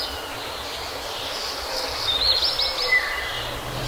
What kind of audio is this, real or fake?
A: real